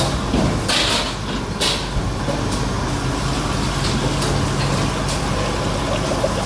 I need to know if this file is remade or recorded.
recorded